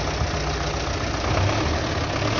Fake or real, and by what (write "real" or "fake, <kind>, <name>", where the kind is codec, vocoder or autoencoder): real